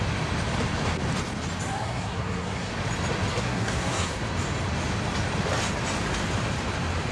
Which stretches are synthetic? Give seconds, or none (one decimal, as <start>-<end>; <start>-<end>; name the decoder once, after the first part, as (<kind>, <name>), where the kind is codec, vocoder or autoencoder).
1.8-2.7 (codec, SNAC); 3.3-4.2